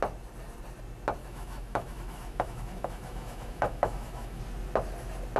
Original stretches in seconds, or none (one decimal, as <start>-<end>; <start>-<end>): 0.0-1.2; 4.4-5.4